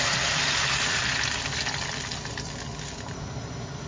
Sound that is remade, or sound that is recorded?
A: recorded